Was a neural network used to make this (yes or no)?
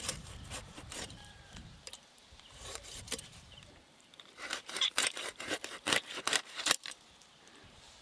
yes